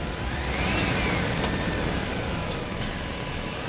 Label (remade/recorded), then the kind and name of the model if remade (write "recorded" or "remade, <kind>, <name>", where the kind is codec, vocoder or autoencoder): recorded